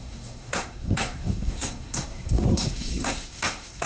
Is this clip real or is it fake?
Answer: fake